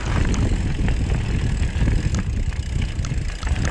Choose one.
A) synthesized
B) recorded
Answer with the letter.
B